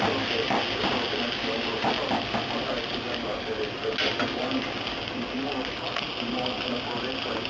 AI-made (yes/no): no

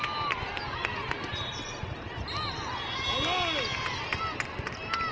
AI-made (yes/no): no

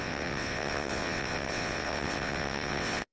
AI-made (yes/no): yes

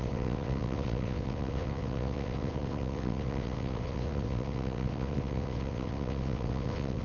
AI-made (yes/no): yes